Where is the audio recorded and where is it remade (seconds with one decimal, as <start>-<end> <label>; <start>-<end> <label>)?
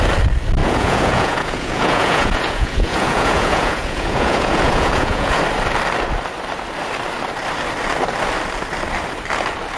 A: 0.0-0.6 recorded; 0.6-5.4 remade; 5.4-9.8 recorded